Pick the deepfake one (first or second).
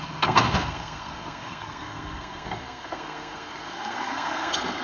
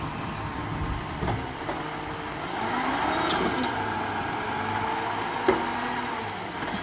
first